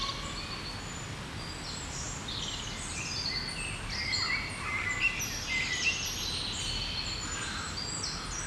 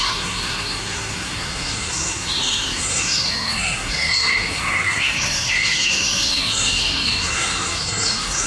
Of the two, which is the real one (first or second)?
first